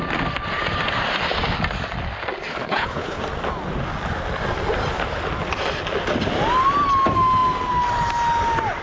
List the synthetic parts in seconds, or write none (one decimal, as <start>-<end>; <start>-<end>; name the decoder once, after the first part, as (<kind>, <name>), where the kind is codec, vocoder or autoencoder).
2.5-3.2 (codec, HILCodec)